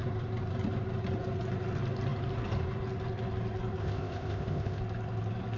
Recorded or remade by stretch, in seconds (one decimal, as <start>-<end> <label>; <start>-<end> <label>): 0.0-3.8 recorded; 3.8-4.8 remade; 4.8-5.6 recorded